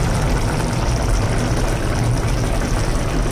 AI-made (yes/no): no